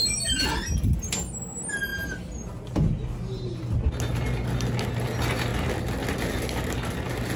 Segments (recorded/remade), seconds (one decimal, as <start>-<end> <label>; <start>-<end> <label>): 0.0-7.4 recorded

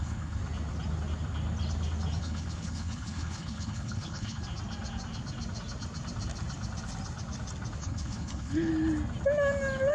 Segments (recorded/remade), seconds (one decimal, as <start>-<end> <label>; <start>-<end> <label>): 0.0-0.4 remade; 0.4-2.2 recorded; 2.2-4.4 remade; 4.4-7.8 recorded; 7.8-8.7 remade; 8.7-9.9 recorded

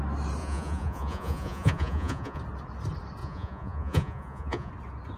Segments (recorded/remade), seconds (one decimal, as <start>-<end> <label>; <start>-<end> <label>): 0.0-0.4 recorded; 0.4-2.4 remade; 2.4-3.2 recorded; 3.2-4.7 remade; 4.7-5.2 recorded

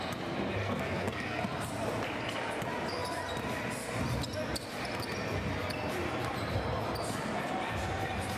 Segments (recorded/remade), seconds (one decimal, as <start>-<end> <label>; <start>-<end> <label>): 0.0-0.6 recorded; 0.6-1.4 remade; 1.4-8.4 recorded

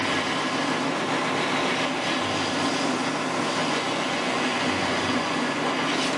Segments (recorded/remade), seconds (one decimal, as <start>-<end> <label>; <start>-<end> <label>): 0.0-3.6 recorded; 3.6-5.7 remade; 5.7-6.2 recorded

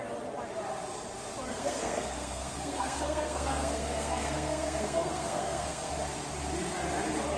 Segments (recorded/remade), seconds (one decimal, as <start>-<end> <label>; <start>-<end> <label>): 0.0-1.5 recorded; 1.5-5.9 remade; 5.9-7.4 recorded